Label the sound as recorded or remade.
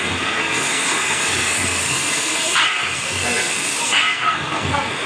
remade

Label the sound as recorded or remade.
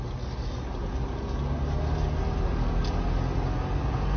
recorded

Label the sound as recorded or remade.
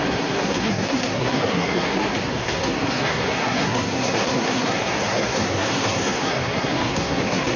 remade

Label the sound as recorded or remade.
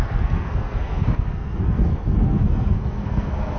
remade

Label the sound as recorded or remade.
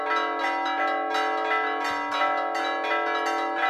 recorded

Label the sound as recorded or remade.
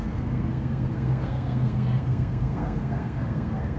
remade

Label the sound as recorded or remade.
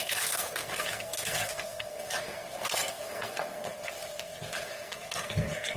remade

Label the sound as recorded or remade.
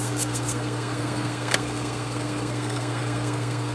remade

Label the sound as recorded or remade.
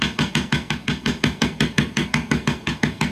remade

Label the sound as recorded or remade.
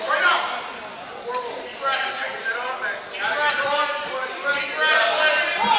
recorded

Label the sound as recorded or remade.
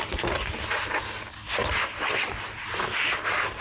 recorded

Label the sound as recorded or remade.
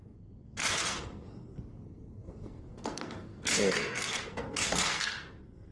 remade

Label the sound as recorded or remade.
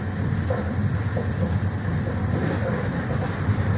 recorded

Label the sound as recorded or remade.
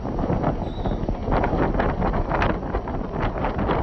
recorded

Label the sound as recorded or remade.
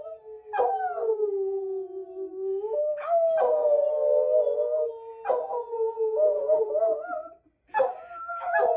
recorded